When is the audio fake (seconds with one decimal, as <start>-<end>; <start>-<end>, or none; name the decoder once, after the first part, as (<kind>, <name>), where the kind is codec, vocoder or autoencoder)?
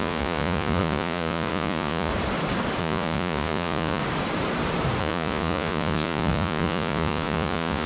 0.0-2.1 (vocoder, Vocos); 2.8-4.0; 5.0-7.9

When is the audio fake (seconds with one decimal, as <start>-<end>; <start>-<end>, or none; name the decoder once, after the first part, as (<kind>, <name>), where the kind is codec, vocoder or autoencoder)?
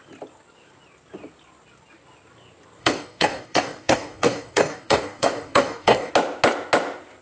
2.8-6.1 (codec, DAC)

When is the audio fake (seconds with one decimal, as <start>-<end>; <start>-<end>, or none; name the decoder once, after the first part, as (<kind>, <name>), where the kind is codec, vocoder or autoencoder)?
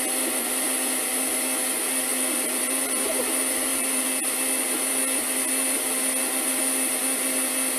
2.1-3.0 (vocoder, BigVGAN v2); 3.7-4.3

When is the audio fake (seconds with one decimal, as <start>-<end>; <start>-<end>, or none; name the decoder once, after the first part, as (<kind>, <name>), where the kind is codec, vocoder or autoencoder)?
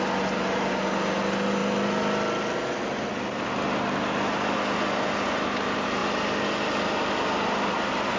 none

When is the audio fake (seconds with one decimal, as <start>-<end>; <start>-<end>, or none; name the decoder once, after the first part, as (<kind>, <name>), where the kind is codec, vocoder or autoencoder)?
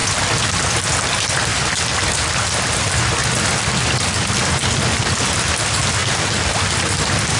none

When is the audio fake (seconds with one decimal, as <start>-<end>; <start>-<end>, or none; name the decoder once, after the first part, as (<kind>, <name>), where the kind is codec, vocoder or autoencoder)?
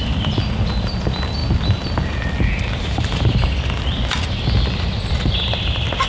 none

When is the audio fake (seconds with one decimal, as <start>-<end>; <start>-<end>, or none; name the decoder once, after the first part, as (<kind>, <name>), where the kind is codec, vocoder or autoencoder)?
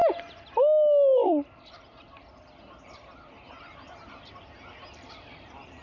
none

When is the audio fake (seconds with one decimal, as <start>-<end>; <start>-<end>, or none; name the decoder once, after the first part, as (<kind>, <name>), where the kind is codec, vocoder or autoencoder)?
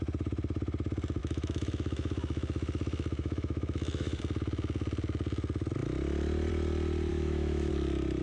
1.2-4.2 (autoencoder, DAC-VAE); 7.1-7.7